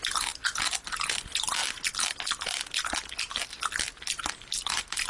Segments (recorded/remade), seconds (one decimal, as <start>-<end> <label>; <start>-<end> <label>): 0.0-5.1 recorded